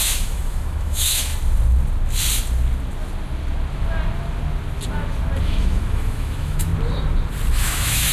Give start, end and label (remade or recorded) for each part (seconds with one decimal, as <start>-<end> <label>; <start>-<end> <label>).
0.0-1.3 remade; 1.3-5.4 recorded; 5.4-6.7 remade; 6.7-7.5 recorded; 7.5-8.1 remade

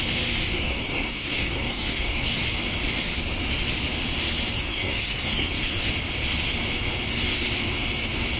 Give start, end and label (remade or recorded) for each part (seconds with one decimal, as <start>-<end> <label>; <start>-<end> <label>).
0.0-0.7 recorded; 0.7-2.4 remade; 2.4-4.6 recorded; 4.6-5.9 remade; 5.9-8.4 recorded

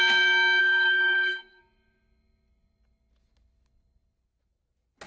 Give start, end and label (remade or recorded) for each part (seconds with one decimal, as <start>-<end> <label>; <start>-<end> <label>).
0.0-0.6 recorded; 0.6-1.6 remade; 1.6-5.1 recorded

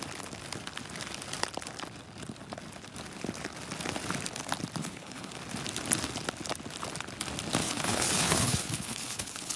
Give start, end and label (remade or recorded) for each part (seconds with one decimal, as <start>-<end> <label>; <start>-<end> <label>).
0.0-4.8 recorded; 4.8-5.3 remade; 5.3-7.6 recorded; 7.6-9.6 remade

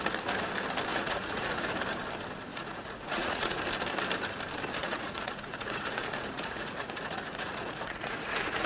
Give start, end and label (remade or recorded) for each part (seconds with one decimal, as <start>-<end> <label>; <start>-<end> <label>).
0.0-0.9 recorded; 0.9-1.7 remade; 1.7-2.5 recorded; 2.5-3.6 remade; 3.6-4.8 recorded; 4.8-8.7 remade

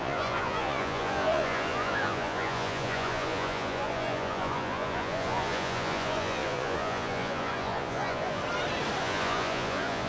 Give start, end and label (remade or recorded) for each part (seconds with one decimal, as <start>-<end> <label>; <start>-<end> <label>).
0.0-8.4 remade; 8.4-9.0 recorded; 9.0-10.1 remade